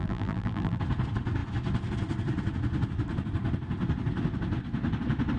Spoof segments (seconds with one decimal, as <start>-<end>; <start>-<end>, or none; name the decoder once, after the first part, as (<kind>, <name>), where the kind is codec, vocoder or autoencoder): 0.0-0.8 (vocoder, BigVGAN v2)

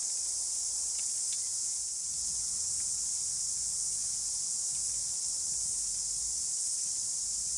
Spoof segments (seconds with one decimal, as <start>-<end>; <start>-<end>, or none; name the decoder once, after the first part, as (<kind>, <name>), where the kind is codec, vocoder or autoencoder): 1.5-2.7 (vocoder, Vocos); 4.0-4.9

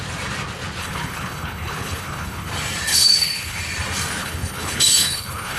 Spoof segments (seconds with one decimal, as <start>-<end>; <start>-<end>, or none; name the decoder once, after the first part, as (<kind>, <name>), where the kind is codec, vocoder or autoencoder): 0.8-2.5 (codec, HILCodec); 2.9-3.6; 4.2-5.6

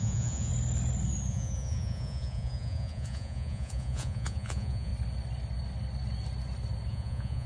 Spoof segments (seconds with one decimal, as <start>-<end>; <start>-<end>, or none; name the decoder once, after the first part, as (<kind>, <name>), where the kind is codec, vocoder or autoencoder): 0.0-0.5 (vocoder, Vocos); 1.3-4.9; 6.9-7.5

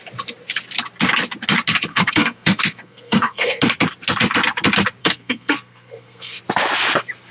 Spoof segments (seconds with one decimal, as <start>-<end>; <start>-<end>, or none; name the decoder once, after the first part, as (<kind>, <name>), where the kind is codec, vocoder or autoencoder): 1.9-3.6 (codec, SNAC); 5.0-6.4

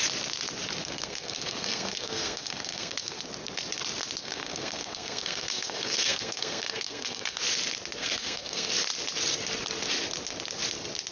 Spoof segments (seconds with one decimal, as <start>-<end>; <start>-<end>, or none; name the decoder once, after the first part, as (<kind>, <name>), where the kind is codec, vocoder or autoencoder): 0.8-3.2 (codec, SNAC); 4.2-7.4; 8.0-8.7